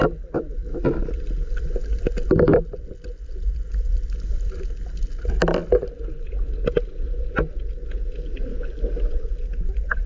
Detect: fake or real real